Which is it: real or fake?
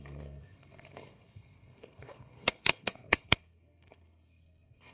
fake